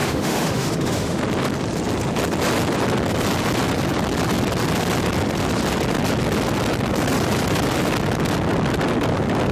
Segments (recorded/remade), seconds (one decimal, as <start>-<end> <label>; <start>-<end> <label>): 0.0-1.2 remade; 1.2-9.5 recorded